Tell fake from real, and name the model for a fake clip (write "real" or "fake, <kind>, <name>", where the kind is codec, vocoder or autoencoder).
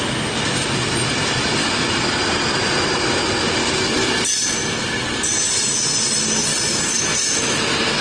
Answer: real